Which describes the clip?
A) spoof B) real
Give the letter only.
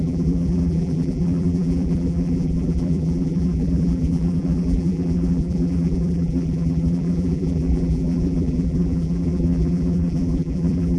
A